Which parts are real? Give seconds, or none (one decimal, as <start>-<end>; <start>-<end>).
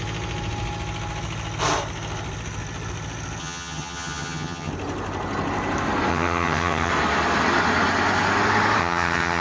0.0-3.4; 4.7-6.1; 6.9-8.8